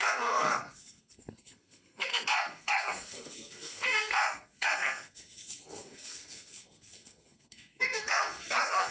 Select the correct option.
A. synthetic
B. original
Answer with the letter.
A